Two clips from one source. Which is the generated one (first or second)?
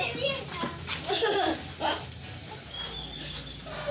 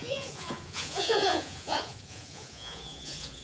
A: second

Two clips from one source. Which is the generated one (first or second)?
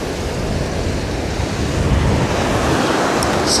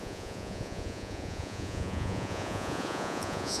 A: second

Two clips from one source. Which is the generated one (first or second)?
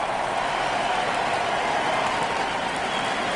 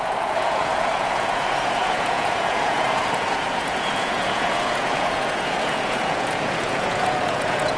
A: second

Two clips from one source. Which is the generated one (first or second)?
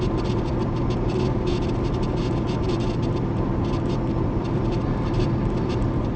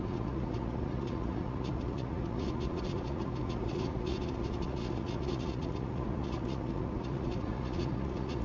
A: second